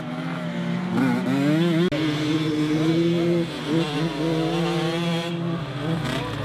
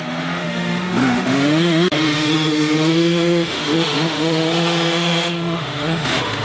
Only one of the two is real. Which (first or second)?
first